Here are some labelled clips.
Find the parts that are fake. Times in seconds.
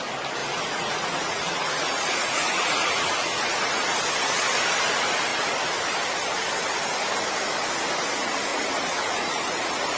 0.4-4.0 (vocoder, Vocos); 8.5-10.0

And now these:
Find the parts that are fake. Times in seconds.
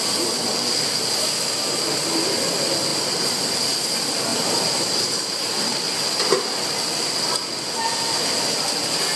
2.9-3.4 (vocoder, BigVGAN v2); 4.3-5.5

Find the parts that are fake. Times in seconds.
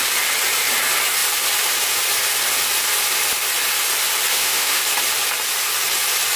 4.3-4.8 (autoencoder, DAC-VAE)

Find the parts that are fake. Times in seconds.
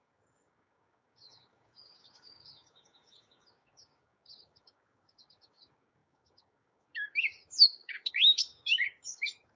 0.0-9.6 (codec, DAC)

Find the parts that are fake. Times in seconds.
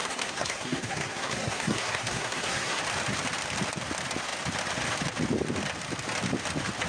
0.0-2.8 (codec, SNAC)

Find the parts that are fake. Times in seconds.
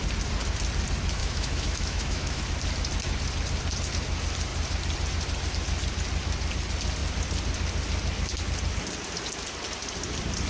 1.2-2.4 (autoencoder, DAC-VAE)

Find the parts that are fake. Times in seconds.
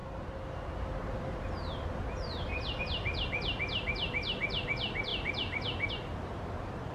5.1-5.9 (vocoder, BigVGAN v2)